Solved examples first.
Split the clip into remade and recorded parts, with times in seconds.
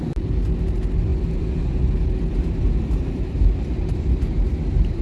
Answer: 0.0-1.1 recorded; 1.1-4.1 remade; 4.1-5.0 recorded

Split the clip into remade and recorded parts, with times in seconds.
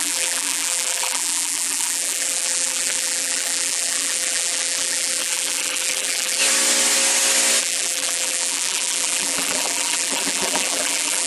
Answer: 0.0-6.4 remade; 6.4-7.6 recorded; 7.6-11.3 remade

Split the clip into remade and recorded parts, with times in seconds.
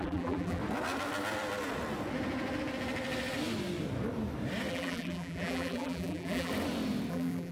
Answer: 0.0-0.6 remade; 0.6-4.7 recorded; 4.7-6.5 remade; 6.5-7.1 recorded; 7.1-7.5 remade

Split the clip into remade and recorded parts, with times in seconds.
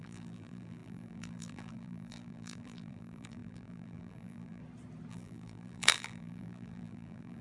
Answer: 0.0-4.6 remade; 4.6-5.1 recorded; 5.1-7.4 remade